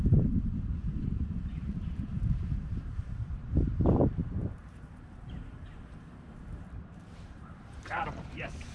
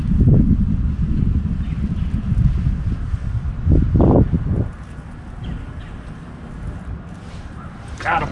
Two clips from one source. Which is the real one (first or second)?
second